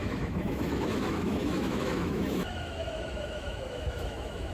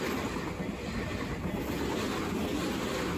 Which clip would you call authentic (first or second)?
second